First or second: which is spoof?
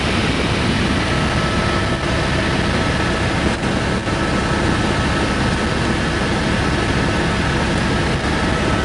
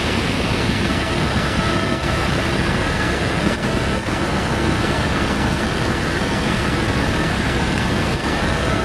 second